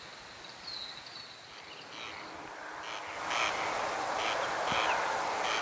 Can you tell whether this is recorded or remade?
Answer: recorded